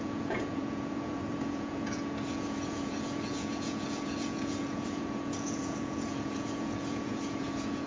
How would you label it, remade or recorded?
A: remade